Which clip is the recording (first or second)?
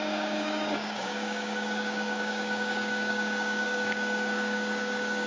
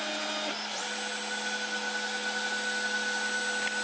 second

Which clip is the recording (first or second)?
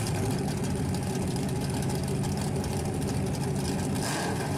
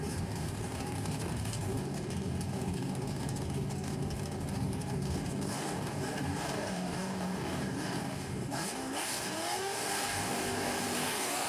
first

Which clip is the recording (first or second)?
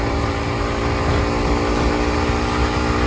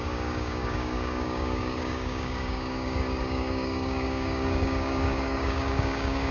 first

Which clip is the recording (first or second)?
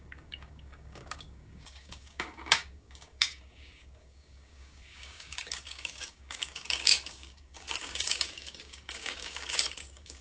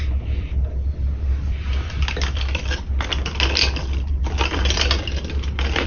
second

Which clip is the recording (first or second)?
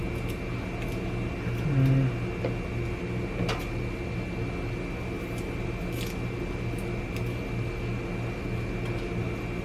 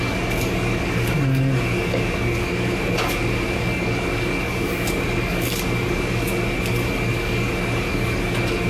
first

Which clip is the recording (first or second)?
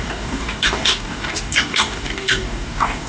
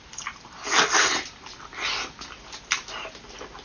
second